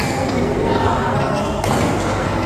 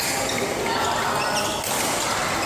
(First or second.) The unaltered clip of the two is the second